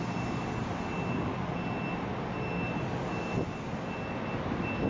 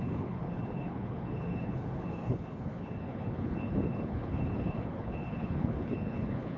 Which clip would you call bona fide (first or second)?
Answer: first